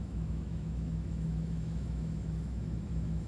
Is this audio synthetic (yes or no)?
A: yes